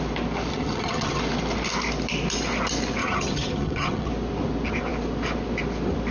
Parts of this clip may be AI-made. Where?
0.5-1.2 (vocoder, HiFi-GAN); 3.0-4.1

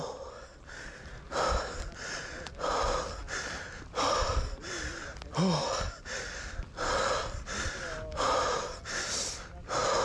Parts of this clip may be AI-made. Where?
0.5-2.5 (vocoder, BigVGAN v2); 3.2-7.2

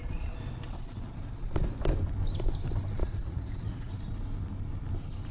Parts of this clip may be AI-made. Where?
3.0-3.9 (vocoder, Vocos)

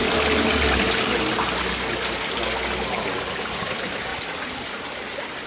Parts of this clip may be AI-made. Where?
4.1-4.7 (vocoder, BigVGAN v2)

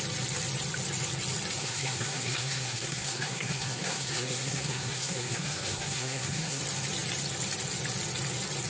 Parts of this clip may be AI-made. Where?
1.6-6.6 (codec, SNAC)

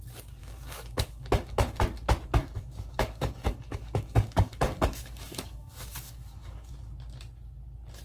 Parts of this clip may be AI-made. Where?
0.4-1.8 (codec, DAC); 2.4-6.7